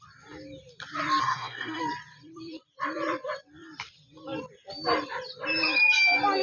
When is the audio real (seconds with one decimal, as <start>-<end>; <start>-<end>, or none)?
0.0-1.2; 1.8-6.4